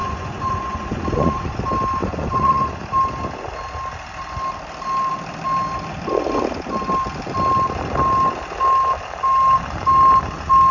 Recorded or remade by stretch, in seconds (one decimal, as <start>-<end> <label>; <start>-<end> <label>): 0.0-1.6 remade; 1.6-2.0 recorded; 2.0-2.8 remade; 2.8-10.7 recorded